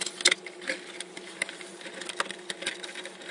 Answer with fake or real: real